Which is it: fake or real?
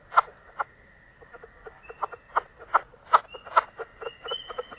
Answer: fake